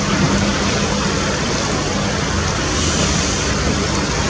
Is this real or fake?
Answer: real